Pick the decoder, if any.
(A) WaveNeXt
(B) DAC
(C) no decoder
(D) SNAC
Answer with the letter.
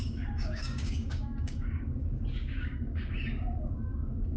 B